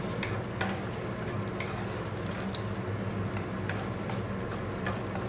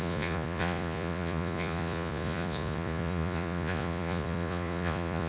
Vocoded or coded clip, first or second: second